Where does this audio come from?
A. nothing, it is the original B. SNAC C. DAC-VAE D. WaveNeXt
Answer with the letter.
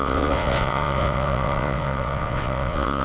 D